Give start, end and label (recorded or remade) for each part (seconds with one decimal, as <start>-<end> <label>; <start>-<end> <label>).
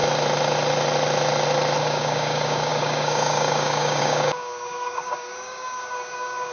0.0-1.8 recorded; 1.8-6.5 remade